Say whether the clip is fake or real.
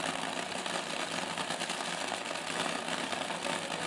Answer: real